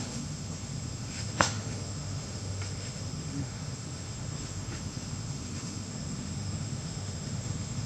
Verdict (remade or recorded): remade